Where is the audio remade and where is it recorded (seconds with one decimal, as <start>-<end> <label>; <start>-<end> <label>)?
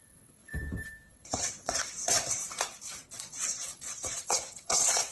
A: 0.0-0.5 remade; 0.5-1.1 recorded; 1.1-2.4 remade; 2.4-3.1 recorded; 3.1-5.1 remade